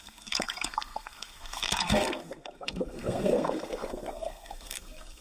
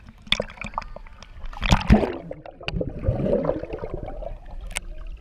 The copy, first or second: first